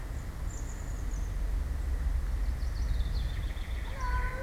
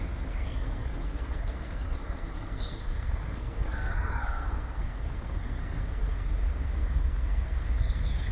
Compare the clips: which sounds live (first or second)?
first